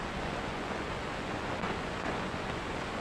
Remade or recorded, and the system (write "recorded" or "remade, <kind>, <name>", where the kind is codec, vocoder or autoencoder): remade, vocoder, Vocos